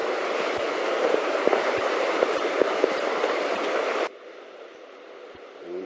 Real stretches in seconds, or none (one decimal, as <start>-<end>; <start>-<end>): 3.5-5.9